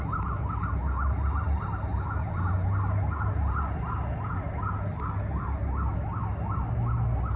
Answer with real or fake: real